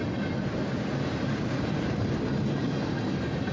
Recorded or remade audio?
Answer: recorded